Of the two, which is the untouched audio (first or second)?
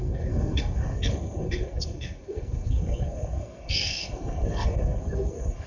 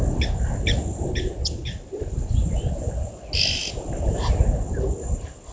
second